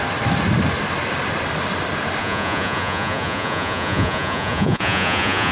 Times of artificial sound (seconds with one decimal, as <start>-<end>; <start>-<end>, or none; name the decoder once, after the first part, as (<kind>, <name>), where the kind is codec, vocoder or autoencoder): 2.2-5.5 (vocoder, Vocos)